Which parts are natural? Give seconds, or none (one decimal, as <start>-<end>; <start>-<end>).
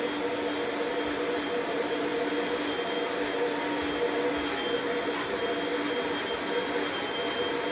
0.0-0.9; 2.3-7.7